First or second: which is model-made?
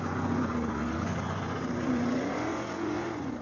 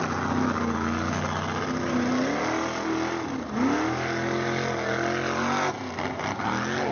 first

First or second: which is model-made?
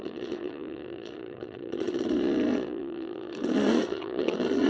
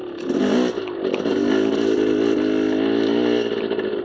first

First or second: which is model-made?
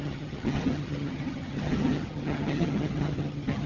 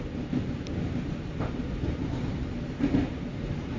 first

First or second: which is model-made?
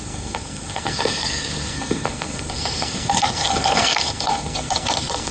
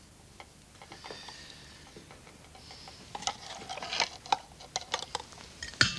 first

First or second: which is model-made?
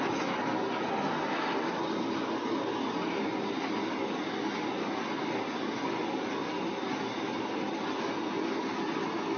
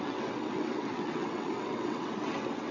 second